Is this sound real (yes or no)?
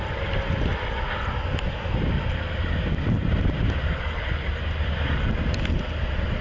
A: yes